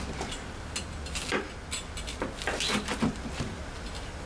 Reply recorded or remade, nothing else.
recorded